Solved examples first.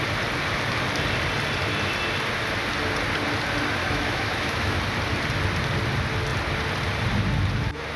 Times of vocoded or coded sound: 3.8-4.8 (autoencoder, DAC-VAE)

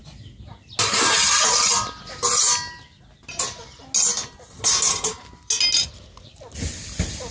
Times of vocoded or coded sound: none

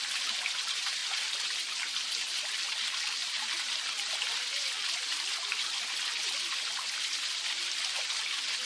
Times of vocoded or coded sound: none

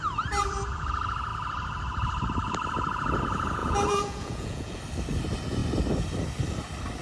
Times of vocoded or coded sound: 3.6-4.8 (vocoder, Vocos)